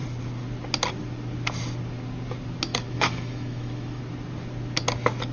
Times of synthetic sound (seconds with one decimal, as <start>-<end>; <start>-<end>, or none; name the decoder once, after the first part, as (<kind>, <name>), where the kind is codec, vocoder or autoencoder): 2.7-4.0 (autoencoder, DAC-VAE)